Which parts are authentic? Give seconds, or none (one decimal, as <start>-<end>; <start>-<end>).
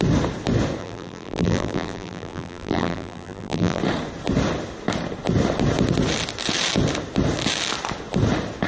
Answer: 0.0-0.8; 3.8-8.7